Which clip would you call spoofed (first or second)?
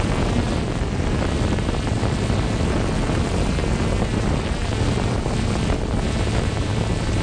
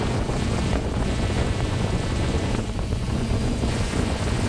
second